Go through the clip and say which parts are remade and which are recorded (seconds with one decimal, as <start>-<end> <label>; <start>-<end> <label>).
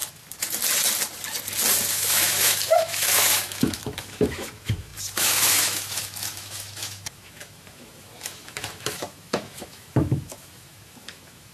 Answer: 0.0-1.9 recorded; 1.9-11.5 remade